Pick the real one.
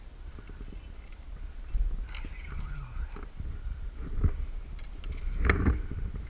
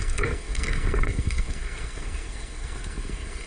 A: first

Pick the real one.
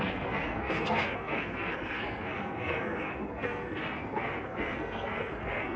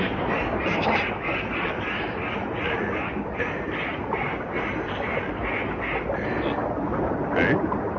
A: second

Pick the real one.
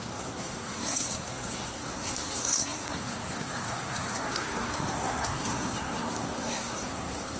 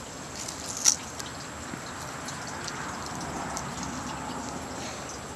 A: second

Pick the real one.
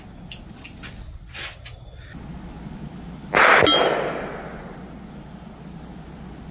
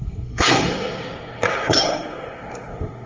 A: first